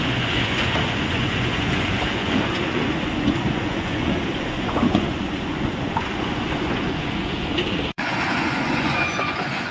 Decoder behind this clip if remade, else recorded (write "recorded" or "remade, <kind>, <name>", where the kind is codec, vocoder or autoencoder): remade, vocoder, Vocos